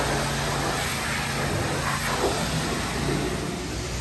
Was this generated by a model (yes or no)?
no